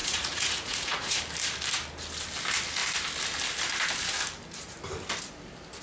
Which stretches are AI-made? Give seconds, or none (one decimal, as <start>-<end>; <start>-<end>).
0.0-1.2